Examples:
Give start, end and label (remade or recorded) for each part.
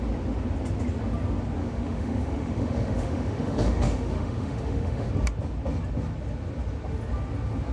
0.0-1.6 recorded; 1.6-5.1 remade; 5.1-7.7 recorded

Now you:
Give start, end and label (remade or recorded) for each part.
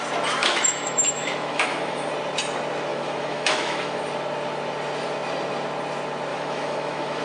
0.0-0.4 recorded; 0.4-2.1 remade; 2.1-2.9 recorded; 2.9-4.0 remade; 4.0-6.3 recorded; 6.3-7.2 remade